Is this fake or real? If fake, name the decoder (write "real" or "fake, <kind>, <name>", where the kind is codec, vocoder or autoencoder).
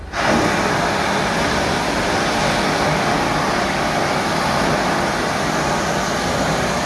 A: real